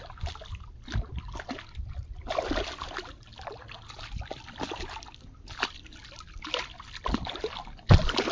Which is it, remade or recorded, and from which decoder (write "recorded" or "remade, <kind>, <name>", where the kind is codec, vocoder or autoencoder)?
recorded